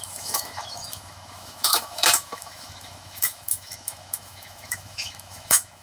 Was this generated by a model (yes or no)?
yes